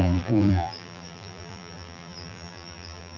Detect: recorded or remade remade